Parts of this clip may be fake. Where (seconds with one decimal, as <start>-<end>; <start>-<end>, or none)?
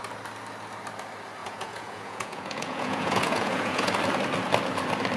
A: 1.4-3.9